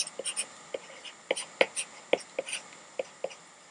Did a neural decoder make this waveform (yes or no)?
no